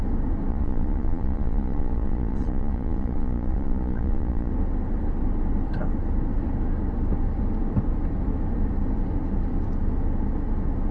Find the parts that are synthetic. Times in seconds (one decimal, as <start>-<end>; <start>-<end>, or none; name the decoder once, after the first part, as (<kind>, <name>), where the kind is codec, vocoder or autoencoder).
0.5-4.5 (vocoder, Vocos)